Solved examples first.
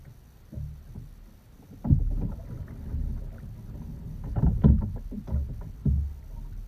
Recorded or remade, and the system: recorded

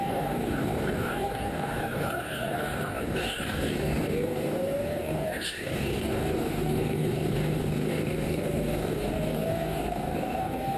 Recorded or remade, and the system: remade, codec, DAC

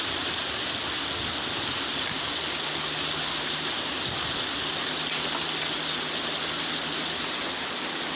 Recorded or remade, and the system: recorded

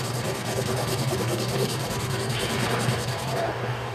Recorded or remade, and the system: remade, codec, DAC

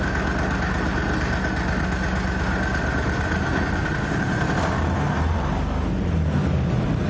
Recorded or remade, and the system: recorded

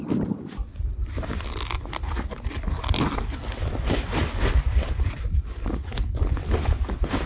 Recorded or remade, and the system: recorded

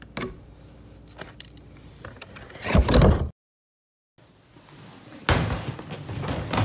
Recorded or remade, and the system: recorded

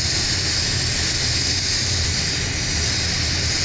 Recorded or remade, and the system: recorded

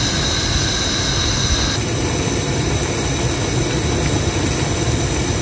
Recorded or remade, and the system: recorded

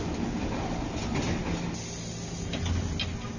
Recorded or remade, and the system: recorded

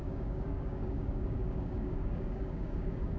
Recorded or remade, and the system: remade, codec, DAC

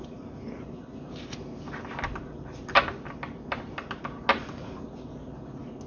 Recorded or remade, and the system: recorded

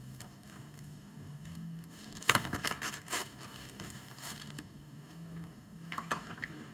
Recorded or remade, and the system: remade, codec, DAC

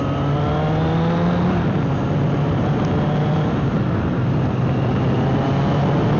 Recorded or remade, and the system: recorded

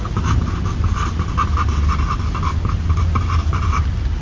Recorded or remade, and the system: recorded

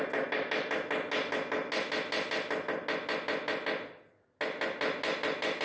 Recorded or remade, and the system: recorded